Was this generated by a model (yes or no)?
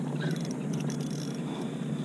no